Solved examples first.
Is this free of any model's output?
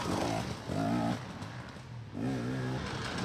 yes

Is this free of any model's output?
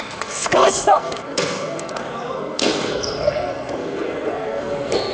no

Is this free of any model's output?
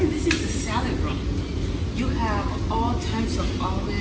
yes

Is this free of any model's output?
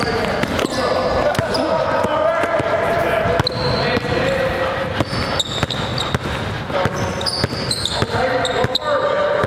yes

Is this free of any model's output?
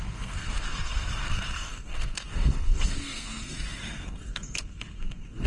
no